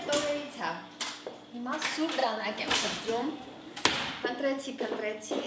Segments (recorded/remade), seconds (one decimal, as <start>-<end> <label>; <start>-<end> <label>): 0.0-2.2 recorded; 2.2-3.3 remade; 3.3-5.5 recorded